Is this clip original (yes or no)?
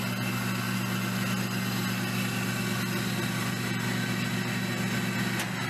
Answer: yes